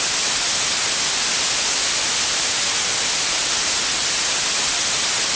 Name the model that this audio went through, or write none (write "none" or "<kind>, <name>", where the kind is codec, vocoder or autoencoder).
none